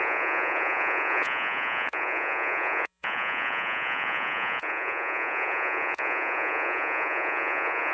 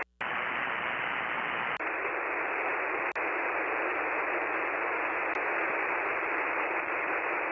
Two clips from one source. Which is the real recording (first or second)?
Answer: second